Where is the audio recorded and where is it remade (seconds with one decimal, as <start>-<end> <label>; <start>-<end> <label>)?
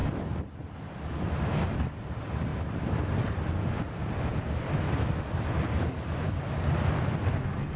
0.0-7.8 recorded